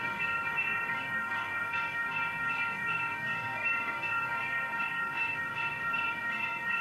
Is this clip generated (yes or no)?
yes